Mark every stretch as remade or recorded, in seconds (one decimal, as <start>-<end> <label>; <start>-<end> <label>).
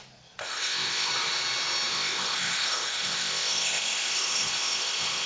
0.0-0.4 recorded; 0.4-1.1 remade; 1.1-1.9 recorded; 1.9-5.3 remade